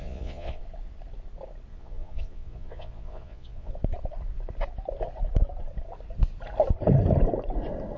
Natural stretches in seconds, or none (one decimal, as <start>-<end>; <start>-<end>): 0.6-1.7; 3.7-8.0